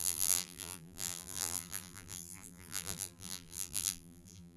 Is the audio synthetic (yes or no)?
yes